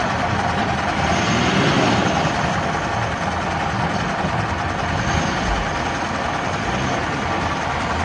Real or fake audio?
real